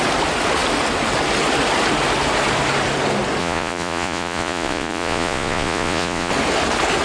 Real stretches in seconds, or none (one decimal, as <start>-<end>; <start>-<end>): 0.0-3.4; 6.3-7.0